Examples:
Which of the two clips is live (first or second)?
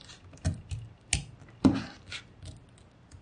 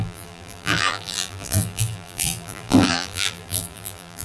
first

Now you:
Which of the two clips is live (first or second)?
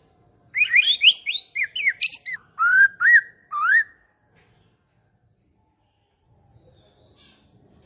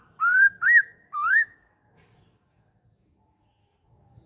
first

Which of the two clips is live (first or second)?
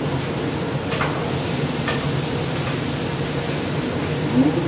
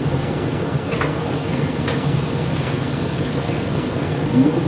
first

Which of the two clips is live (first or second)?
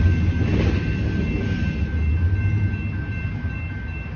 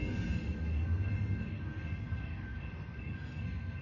first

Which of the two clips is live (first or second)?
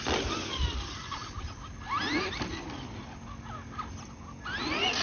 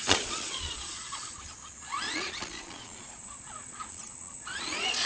first